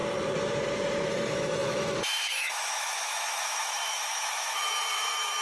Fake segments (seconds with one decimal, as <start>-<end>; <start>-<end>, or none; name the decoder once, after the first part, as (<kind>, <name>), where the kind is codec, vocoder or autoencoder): 1.1-5.4 (autoencoder, DAC-VAE)